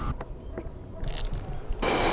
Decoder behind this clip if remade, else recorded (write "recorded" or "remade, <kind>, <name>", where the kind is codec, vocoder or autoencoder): remade, vocoder, BigVGAN v2